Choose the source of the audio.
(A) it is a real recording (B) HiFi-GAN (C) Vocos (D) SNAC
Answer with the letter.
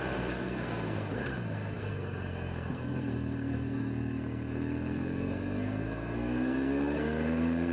D